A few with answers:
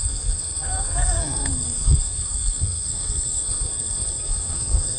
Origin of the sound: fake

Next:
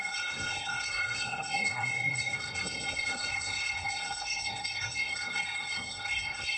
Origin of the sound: fake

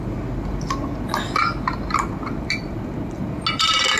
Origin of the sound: real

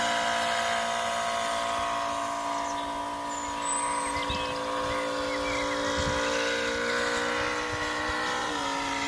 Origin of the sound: real